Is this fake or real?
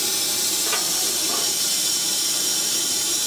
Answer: real